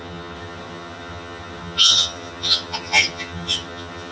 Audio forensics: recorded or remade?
remade